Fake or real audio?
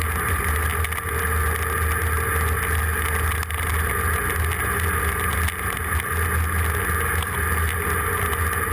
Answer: real